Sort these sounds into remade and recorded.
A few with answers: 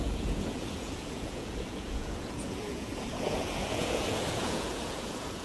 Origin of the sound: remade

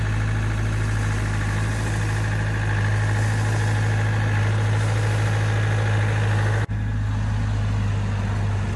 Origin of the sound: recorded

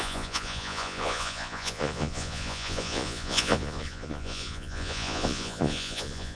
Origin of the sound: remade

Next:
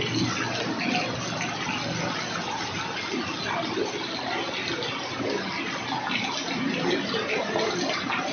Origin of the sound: recorded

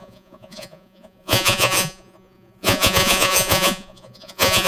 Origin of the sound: remade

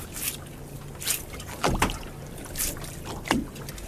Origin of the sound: recorded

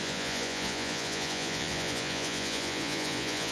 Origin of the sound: remade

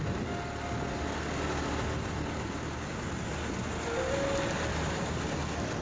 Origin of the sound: recorded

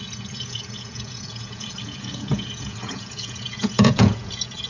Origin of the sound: remade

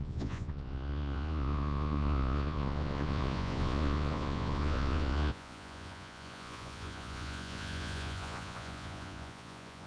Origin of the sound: remade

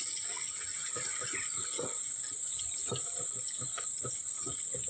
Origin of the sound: recorded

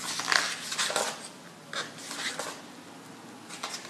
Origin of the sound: recorded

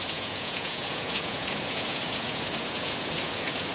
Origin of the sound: remade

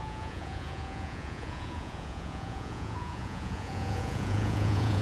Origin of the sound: remade